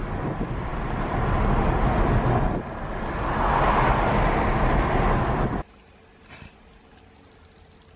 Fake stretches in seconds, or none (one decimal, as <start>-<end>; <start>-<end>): none